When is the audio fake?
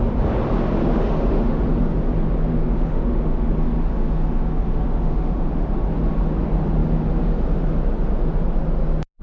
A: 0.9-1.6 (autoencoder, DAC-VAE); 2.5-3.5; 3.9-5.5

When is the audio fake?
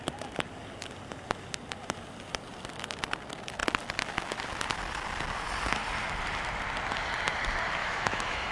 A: 7.8-8.5 (autoencoder, DAC-VAE)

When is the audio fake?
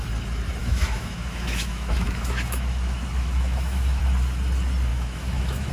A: 0.6-4.0 (autoencoder, DAC-VAE); 4.9-5.7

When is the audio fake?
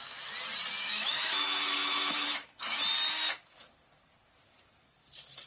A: 0.8-2.8 (autoencoder, DAC-VAE)